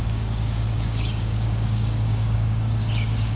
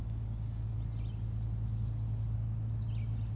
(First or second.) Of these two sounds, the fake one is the first